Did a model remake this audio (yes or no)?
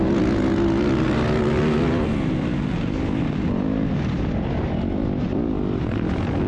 no